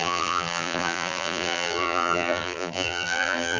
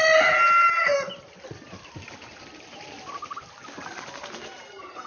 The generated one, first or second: first